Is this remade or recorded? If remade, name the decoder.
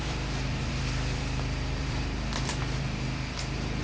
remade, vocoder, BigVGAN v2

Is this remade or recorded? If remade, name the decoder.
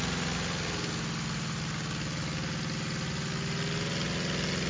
recorded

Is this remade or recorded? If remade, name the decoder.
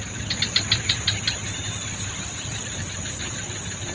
remade, vocoder, BigVGAN v2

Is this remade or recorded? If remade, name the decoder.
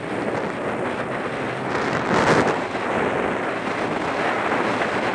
recorded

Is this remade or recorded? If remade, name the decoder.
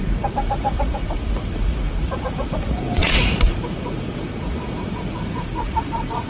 remade, vocoder, Vocos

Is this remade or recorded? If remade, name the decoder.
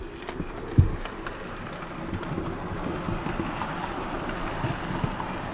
recorded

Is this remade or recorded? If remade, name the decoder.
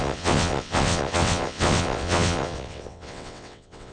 remade, vocoder, WaveNeXt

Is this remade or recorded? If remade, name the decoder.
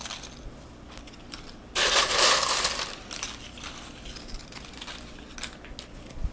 recorded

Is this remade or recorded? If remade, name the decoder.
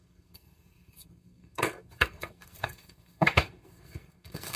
remade, codec, SNAC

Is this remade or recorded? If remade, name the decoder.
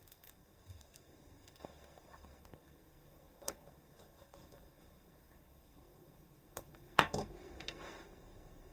remade, codec, SNAC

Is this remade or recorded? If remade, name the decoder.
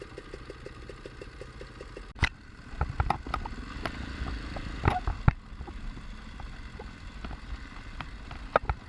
recorded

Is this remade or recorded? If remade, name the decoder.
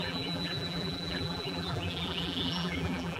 remade, vocoder, BigVGAN v2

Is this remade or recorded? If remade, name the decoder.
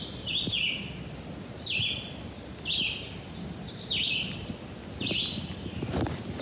recorded